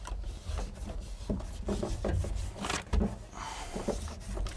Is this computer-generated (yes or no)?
no